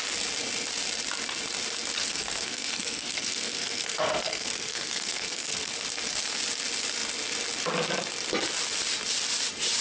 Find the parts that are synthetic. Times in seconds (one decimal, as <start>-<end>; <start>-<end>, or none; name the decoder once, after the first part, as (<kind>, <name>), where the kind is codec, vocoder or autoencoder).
2.0-5.7 (codec, SNAC)